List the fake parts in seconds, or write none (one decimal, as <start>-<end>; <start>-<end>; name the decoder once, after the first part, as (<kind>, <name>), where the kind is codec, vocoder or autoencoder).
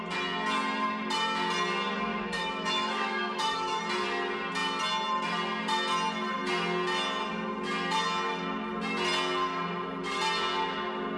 2.1-3.8 (autoencoder, DAC-VAE)